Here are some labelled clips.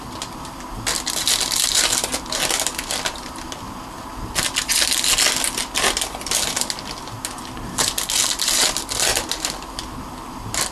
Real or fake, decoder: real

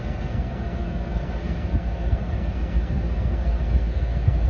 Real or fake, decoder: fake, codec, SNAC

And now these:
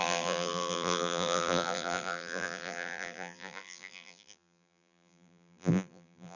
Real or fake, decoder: fake, vocoder, BigVGAN v2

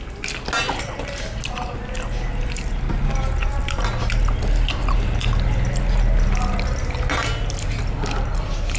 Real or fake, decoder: real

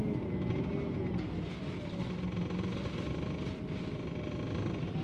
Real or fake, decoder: real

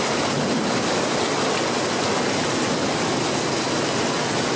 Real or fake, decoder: real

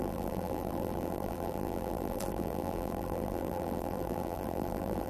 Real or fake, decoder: fake, vocoder, BigVGAN v2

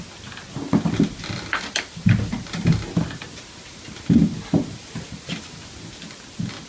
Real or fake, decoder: real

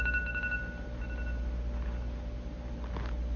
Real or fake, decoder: real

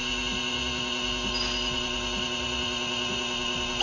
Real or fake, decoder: real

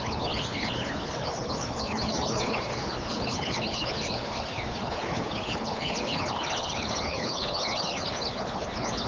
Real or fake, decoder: fake, codec, HILCodec